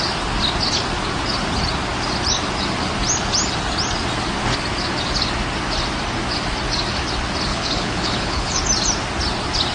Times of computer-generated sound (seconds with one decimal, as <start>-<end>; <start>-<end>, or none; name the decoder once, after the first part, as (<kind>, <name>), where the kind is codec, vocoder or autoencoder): 7.5-8.6 (codec, HILCodec)